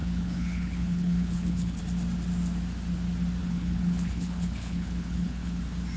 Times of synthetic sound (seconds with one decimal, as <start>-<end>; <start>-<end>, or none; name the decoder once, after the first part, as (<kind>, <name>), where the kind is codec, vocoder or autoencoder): 0.0-1.8 (codec, HILCodec); 3.4-5.6

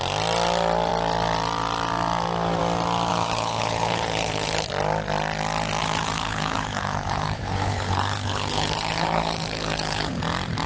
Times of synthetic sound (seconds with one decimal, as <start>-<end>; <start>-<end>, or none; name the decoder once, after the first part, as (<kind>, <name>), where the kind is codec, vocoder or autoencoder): 3.1-4.7 (codec, HILCodec); 5.8-10.2

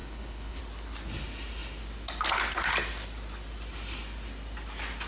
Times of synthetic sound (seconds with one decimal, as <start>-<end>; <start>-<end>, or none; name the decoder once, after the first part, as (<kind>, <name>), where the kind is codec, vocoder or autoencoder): 0.0-0.6 (codec, HILCodec)